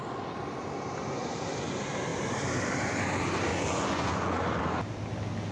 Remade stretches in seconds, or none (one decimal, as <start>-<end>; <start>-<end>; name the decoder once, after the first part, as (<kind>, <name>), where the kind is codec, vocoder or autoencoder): 3.5-4.6 (vocoder, Vocos)